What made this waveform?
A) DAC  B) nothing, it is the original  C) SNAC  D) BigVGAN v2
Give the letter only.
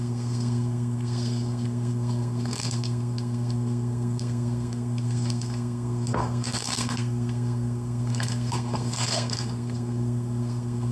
C